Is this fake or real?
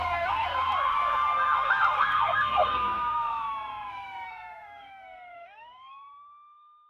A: fake